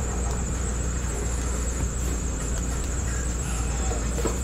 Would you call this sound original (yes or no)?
no